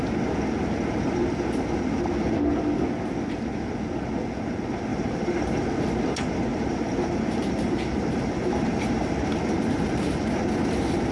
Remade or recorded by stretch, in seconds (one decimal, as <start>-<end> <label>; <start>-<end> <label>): 0.0-4.9 recorded; 4.9-5.7 remade; 5.7-6.5 recorded; 6.5-9.5 remade; 9.5-11.1 recorded